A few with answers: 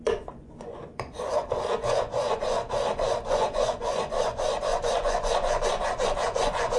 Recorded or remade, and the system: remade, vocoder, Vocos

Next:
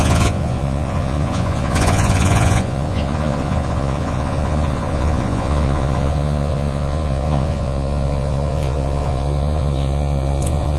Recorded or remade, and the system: remade, vocoder, Vocos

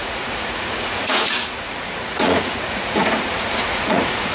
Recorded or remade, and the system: remade, vocoder, Vocos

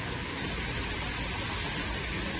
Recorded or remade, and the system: recorded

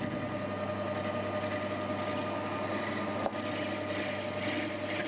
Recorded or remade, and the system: recorded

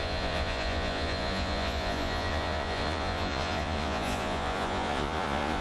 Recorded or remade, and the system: remade, vocoder, Vocos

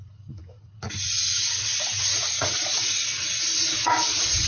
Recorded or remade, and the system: remade, vocoder, Vocos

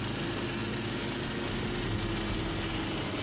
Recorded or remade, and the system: recorded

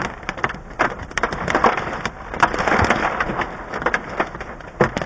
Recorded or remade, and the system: recorded